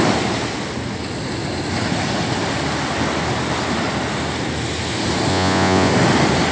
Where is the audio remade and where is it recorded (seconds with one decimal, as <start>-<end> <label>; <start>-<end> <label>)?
0.0-5.3 recorded; 5.3-5.9 remade; 5.9-6.5 recorded

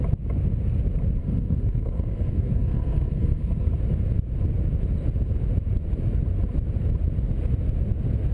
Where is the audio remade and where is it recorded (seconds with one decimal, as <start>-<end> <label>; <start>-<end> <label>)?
0.0-1.2 recorded; 1.2-3.7 remade; 3.7-8.3 recorded

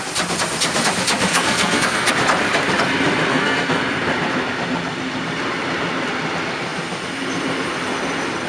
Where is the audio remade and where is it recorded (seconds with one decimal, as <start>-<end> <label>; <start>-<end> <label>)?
0.0-1.3 recorded; 1.3-2.1 remade; 2.1-3.3 recorded; 3.3-3.8 remade; 3.8-8.5 recorded

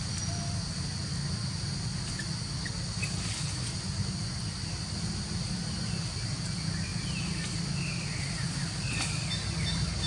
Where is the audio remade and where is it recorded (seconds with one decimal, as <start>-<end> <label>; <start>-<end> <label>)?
0.0-10.1 recorded

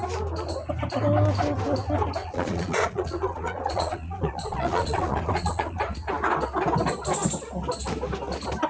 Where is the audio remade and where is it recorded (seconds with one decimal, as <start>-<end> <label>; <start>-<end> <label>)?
0.0-2.2 recorded; 2.2-5.8 remade; 5.8-8.7 recorded

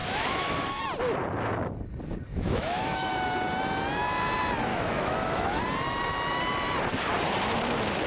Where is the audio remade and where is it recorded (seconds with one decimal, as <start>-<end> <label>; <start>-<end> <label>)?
0.0-0.8 remade; 0.8-2.3 recorded; 2.3-3.1 remade; 3.1-4.7 recorded; 4.7-5.6 remade; 5.6-8.1 recorded